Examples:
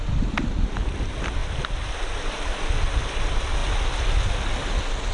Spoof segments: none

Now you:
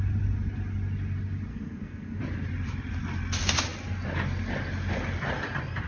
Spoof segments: 1.5-2.2

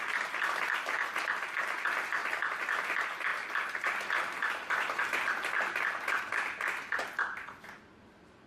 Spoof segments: none

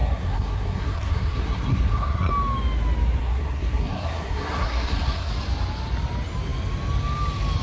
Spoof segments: 0.0-2.3; 3.2-5.3